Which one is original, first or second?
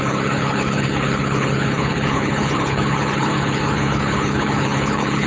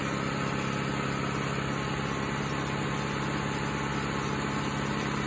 second